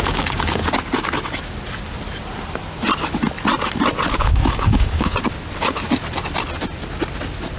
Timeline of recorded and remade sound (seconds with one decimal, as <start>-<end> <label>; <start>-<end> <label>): 0.0-0.6 remade; 0.6-4.1 recorded; 4.1-5.1 remade; 5.1-7.6 recorded

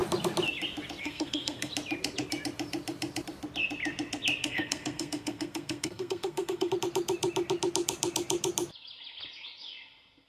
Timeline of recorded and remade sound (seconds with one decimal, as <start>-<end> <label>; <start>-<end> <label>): 0.0-1.0 recorded; 1.0-1.7 remade; 1.7-4.4 recorded; 4.4-6.7 remade; 6.7-10.3 recorded

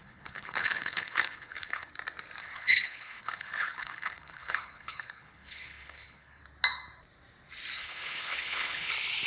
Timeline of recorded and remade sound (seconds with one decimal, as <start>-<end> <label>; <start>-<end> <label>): 0.0-1.9 remade; 1.9-2.4 recorded; 2.4-6.4 remade; 6.4-7.8 recorded; 7.8-8.9 remade; 8.9-9.3 recorded

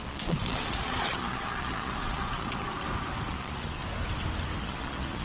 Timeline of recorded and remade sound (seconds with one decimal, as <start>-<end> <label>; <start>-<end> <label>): 0.0-2.7 remade; 2.7-3.3 recorded; 3.3-3.8 remade; 3.8-4.6 recorded; 4.6-5.2 remade

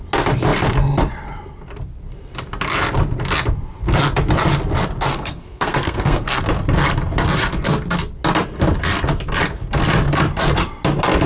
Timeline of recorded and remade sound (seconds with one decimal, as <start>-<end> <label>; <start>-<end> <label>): 0.0-5.1 recorded; 5.1-6.4 remade; 6.4-11.3 recorded